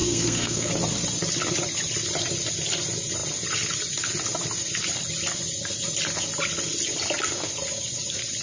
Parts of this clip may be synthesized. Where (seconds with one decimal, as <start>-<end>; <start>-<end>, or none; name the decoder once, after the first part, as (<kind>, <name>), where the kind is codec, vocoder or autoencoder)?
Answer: 0.0-0.7 (codec, SNAC)